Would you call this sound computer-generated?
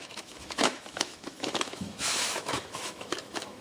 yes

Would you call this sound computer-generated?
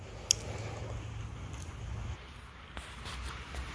no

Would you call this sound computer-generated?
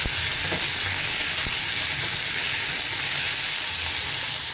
no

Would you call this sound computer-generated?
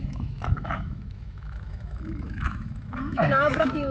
yes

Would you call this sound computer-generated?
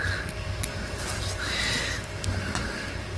no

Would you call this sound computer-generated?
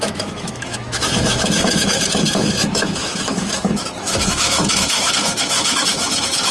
yes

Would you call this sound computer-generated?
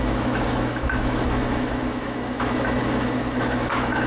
yes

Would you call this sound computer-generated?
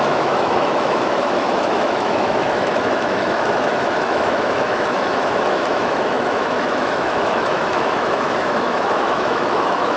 yes